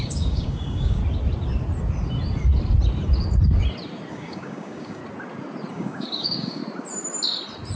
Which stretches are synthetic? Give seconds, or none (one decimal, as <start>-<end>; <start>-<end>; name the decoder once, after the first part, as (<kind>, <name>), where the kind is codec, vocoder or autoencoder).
0.0-1.0 (codec, DAC); 4.1-5.0; 5.7-6.6